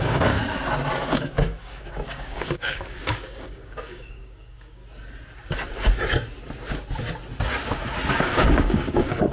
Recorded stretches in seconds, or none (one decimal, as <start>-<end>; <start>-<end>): 0.4-1.0; 4.8-8.1